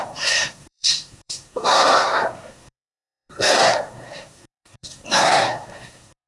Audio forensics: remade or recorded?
remade